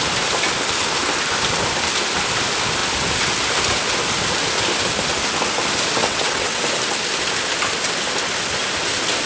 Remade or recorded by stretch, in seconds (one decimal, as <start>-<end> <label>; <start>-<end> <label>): 0.0-6.0 recorded; 6.0-6.6 remade; 6.6-9.3 recorded